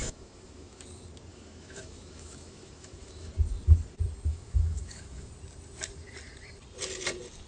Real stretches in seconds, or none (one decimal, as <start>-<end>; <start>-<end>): 0.8-1.3; 3.3-4.3; 5.3-7.5